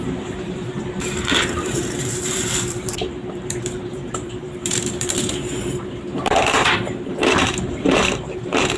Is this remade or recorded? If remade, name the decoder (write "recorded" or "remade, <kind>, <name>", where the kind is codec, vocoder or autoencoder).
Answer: remade, vocoder, BigVGAN v2